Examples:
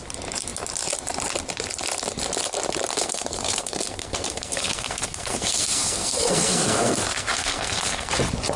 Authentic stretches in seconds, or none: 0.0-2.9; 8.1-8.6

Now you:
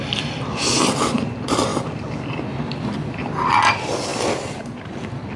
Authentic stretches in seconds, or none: 0.0-5.4

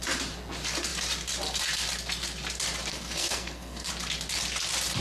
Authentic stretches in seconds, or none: 0.0-2.9; 3.9-5.0